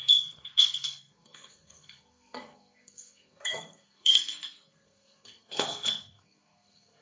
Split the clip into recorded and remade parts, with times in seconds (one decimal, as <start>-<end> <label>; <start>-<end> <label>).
0.0-7.0 remade